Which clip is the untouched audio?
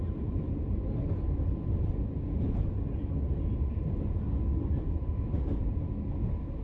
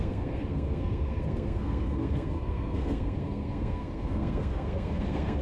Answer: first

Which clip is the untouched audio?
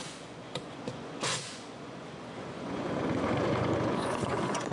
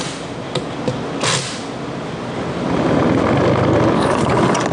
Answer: second